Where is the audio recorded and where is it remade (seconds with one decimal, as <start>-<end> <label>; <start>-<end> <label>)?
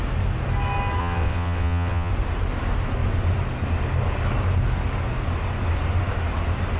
0.0-1.0 recorded; 1.0-2.1 remade; 2.1-6.8 recorded